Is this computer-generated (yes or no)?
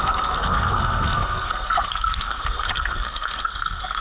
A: yes